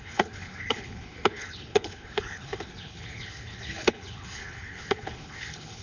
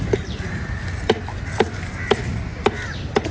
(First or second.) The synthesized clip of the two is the first